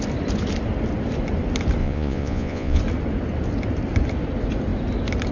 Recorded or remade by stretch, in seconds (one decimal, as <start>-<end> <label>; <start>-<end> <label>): 0.0-1.8 recorded; 1.8-2.8 remade; 2.8-5.3 recorded